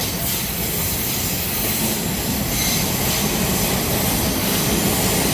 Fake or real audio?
real